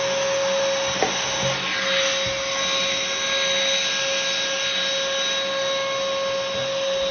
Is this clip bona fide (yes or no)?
yes